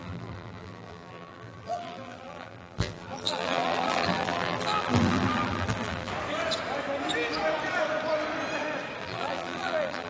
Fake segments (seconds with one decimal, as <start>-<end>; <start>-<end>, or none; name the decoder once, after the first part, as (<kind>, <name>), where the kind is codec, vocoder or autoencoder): 0.0-6.1 (vocoder, BigVGAN v2); 9.0-10.1